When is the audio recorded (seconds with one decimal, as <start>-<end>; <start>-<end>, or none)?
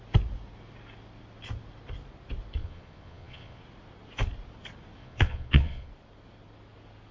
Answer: 0.0-2.6; 3.6-5.0; 5.9-7.1